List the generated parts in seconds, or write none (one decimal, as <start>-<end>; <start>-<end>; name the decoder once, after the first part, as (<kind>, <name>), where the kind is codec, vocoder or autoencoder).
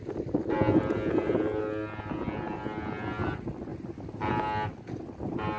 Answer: none